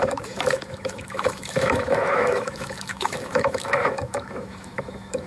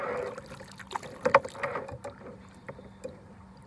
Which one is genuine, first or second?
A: second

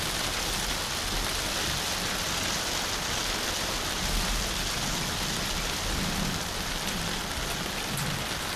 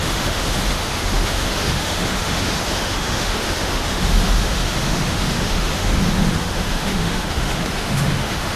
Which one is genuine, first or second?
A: first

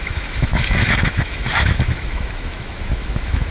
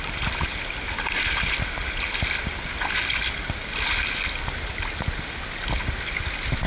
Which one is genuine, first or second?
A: second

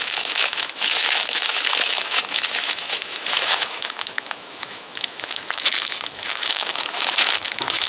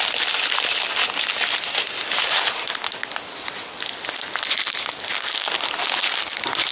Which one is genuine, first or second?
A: second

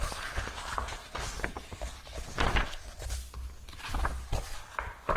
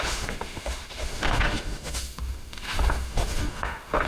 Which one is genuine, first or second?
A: first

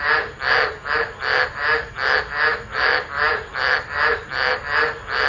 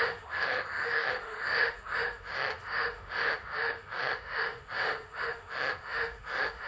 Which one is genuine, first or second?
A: first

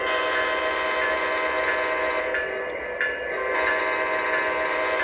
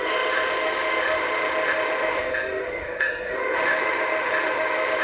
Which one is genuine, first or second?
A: first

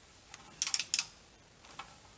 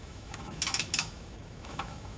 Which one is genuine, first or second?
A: first